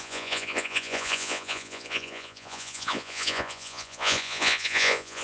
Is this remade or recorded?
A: remade